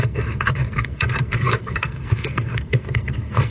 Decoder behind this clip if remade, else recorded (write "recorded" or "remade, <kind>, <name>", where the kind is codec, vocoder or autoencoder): remade, codec, SNAC